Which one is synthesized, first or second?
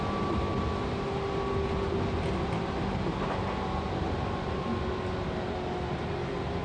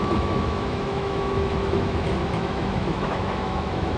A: second